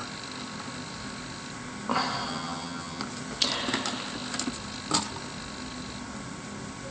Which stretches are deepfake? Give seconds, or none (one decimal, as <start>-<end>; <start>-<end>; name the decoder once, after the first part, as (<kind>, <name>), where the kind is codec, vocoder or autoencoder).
2.3-3.0 (vocoder, HiFi-GAN)